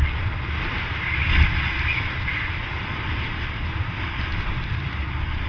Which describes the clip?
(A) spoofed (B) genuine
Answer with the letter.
B